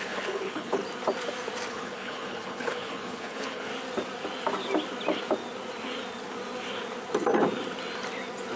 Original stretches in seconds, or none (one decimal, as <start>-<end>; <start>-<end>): 0.8-1.7; 3.7-8.6